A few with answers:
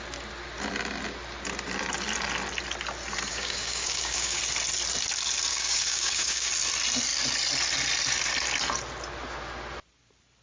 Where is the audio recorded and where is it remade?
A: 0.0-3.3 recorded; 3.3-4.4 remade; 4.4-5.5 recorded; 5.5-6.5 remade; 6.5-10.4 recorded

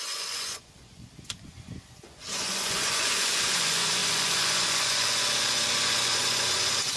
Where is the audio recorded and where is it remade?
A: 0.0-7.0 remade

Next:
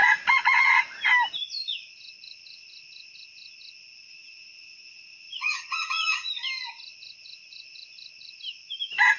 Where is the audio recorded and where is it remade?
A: 0.0-0.8 remade; 0.8-4.1 recorded; 4.1-6.3 remade; 6.3-9.2 recorded

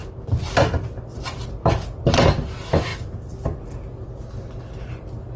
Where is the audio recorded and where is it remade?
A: 0.0-5.4 recorded

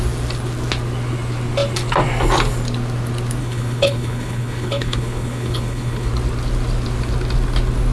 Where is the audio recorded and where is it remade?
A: 0.0-3.4 recorded; 3.4-6.1 remade; 6.1-7.9 recorded